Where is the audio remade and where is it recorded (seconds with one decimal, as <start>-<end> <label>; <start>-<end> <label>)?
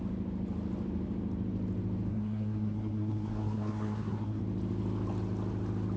0.0-2.1 recorded; 2.1-4.4 remade; 4.4-6.0 recorded